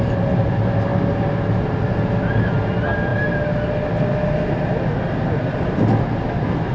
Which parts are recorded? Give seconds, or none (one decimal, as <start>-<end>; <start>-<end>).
0.0-6.7

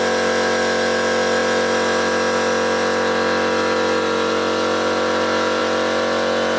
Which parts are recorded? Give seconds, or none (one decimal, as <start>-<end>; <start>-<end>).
0.0-6.6